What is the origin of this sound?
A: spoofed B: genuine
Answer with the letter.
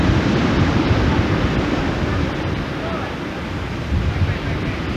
B